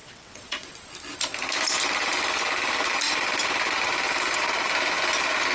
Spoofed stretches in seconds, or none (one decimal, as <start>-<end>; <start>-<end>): 0.0-0.7